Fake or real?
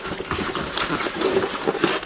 real